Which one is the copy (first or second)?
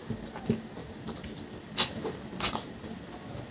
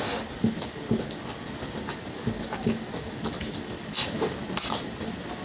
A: first